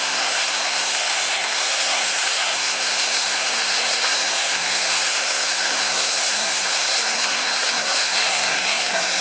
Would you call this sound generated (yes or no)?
yes